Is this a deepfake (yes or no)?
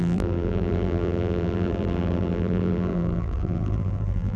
yes